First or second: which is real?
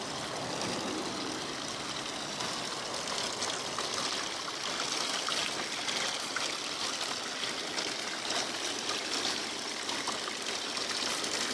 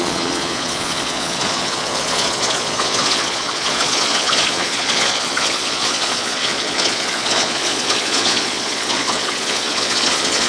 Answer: first